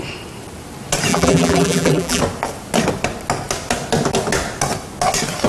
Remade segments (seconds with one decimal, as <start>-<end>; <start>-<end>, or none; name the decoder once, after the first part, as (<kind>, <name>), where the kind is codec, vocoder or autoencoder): 1.1-2.2 (vocoder, BigVGAN v2)